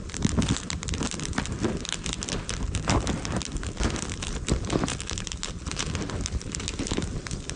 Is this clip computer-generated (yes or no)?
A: yes